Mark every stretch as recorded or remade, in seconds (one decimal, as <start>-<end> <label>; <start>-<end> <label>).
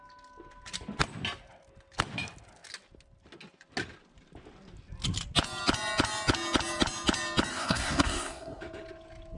0.0-7.5 recorded; 7.5-8.6 remade; 8.6-9.4 recorded